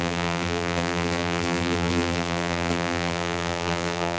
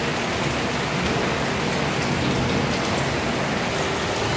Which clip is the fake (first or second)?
first